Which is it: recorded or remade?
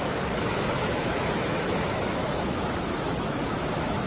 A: remade